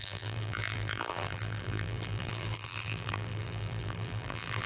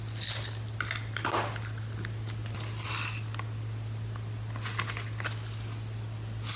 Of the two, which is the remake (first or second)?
first